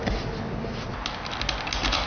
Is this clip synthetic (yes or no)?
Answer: no